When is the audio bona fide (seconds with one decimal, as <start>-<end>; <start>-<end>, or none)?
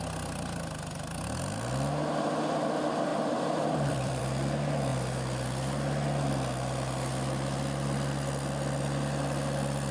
0.0-3.1; 4.2-9.9